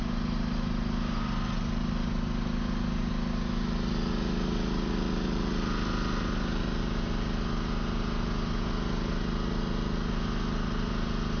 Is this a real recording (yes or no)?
yes